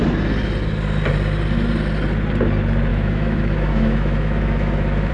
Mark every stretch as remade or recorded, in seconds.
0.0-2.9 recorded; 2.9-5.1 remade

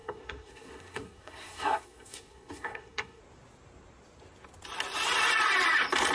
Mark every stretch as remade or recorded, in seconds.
0.0-3.2 remade; 3.2-6.1 recorded